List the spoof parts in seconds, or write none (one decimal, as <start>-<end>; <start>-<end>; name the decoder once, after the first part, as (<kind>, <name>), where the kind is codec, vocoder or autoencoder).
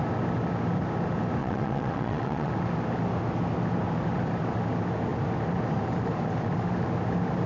1.4-2.5 (vocoder, WaveNeXt)